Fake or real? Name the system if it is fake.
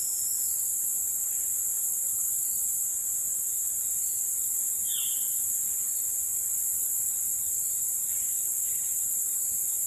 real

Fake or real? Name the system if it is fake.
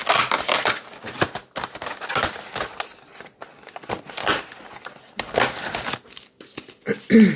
real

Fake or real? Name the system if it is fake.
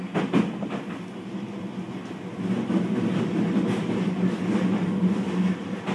real